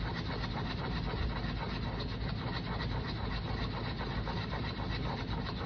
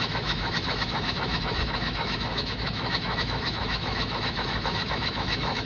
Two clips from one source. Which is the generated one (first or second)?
second